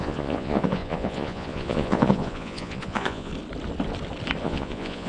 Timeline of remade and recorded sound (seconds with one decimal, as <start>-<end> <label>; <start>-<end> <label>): 0.0-3.3 remade; 3.3-4.4 recorded; 4.4-5.1 remade